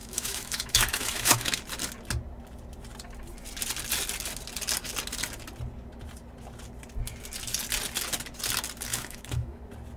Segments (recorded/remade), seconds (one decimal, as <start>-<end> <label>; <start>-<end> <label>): 0.0-1.6 remade; 1.6-8.9 recorded; 8.9-9.6 remade; 9.6-10.0 recorded